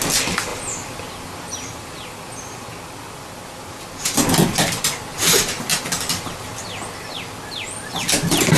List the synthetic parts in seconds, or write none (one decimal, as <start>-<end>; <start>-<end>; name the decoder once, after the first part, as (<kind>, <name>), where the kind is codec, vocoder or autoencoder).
none